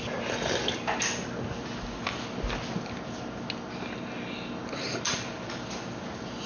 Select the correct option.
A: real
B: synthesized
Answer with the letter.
A